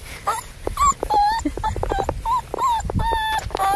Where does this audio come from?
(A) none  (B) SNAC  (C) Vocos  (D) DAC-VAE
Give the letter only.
A